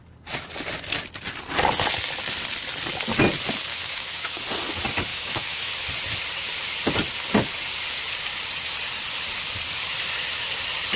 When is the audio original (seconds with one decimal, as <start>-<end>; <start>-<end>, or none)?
0.0-3.7; 4.4-5.1; 5.7-11.0